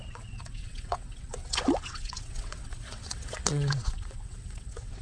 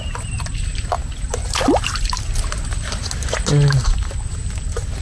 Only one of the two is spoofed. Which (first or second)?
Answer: first